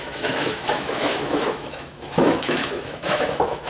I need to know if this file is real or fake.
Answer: fake